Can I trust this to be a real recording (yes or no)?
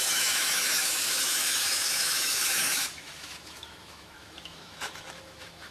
no